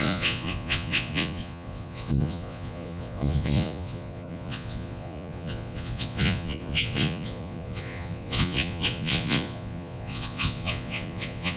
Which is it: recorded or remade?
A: remade